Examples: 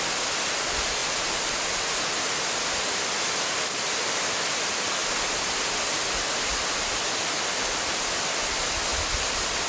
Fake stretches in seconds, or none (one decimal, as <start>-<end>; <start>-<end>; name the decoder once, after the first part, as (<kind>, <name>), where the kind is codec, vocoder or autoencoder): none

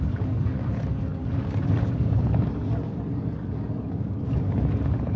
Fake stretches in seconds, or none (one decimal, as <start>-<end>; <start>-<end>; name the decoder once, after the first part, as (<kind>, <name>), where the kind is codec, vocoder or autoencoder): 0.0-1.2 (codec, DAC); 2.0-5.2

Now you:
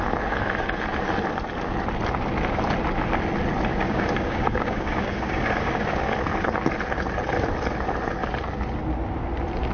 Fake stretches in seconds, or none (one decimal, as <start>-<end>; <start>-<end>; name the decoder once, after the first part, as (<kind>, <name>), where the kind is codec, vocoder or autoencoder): 3.7-6.0 (codec, DAC)

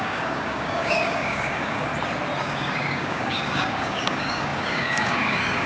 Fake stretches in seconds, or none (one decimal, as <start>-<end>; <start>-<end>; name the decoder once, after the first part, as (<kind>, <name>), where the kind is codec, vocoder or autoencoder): 0.0-1.9 (codec, DAC); 2.4-5.7

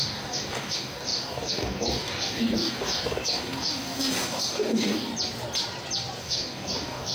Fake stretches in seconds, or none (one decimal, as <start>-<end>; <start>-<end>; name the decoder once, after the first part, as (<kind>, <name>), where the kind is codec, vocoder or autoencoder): 0.0-5.1 (codec, DAC); 6.2-7.1

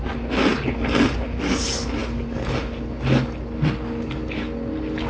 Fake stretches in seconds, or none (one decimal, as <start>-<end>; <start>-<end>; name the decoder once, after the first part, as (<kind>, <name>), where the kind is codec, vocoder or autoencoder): none